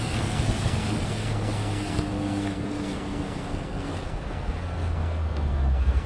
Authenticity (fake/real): fake